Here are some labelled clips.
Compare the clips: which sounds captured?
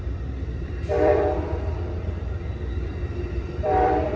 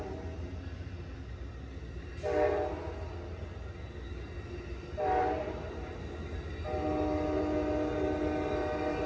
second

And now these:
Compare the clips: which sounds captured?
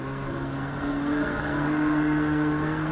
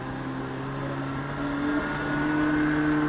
second